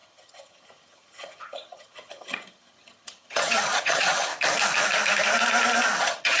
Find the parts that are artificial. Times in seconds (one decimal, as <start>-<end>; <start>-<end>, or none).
0.0-4.3; 6.0-6.4